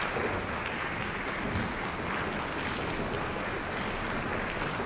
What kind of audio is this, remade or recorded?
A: recorded